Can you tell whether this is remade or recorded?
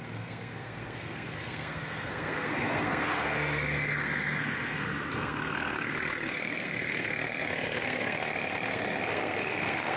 remade